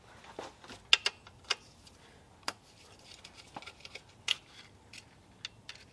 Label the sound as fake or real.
real